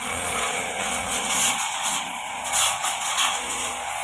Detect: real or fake fake